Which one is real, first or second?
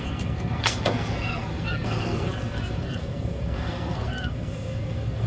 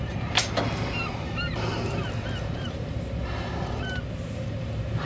second